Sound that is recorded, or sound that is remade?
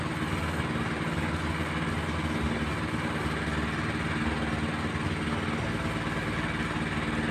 recorded